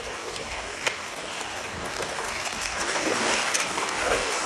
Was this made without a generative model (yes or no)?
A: no